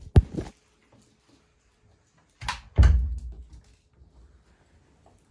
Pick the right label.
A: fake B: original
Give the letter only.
B